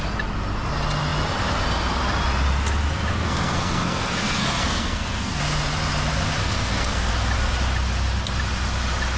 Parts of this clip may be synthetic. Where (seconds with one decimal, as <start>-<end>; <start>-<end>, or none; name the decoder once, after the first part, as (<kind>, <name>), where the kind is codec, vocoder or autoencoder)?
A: 3.1-5.4 (codec, SNAC); 6.4-7.1